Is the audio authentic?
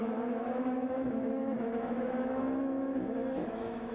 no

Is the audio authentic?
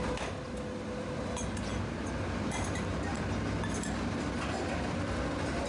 yes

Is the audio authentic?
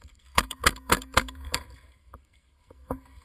no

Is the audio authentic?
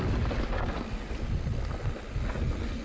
yes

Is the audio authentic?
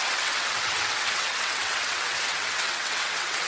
no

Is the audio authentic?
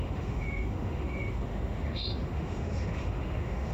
no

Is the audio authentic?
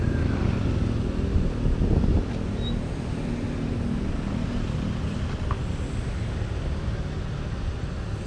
yes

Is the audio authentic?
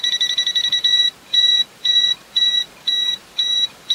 no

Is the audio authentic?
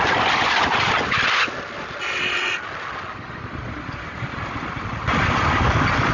yes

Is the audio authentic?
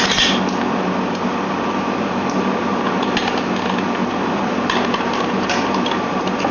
no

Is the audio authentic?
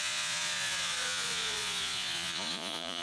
no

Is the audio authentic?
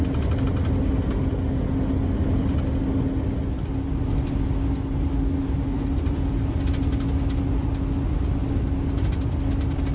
yes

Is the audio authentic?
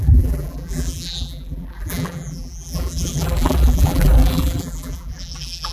no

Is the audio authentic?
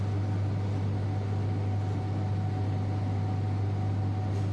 yes